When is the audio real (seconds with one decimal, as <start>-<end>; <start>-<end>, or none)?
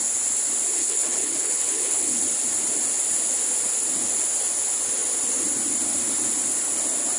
0.0-0.8; 2.2-7.2